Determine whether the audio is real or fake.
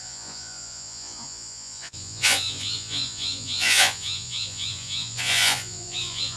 fake